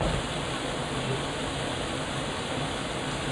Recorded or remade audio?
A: recorded